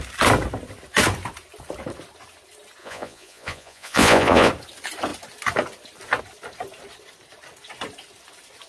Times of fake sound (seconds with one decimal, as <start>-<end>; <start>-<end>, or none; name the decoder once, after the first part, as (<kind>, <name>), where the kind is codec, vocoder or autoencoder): 2.8-4.5 (vocoder, Vocos)